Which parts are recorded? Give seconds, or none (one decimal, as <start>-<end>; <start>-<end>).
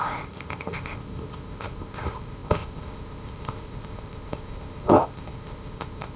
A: none